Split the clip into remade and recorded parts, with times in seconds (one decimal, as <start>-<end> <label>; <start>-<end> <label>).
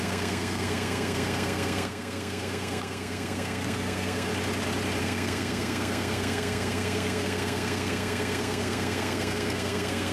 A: 0.0-4.3 remade; 4.3-5.0 recorded; 5.0-10.1 remade